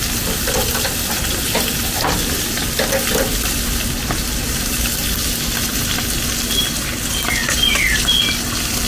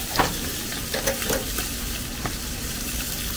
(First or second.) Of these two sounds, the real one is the first